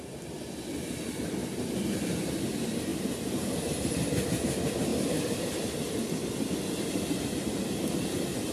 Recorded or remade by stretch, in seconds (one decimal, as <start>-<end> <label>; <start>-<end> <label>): 0.0-1.4 recorded; 1.4-2.1 remade; 2.1-4.9 recorded; 4.9-7.6 remade; 7.6-8.5 recorded